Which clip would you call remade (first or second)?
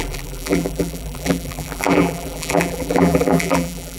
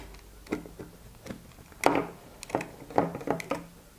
first